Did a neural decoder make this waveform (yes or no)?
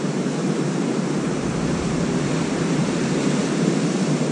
yes